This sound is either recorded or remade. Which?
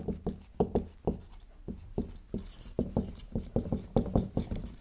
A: recorded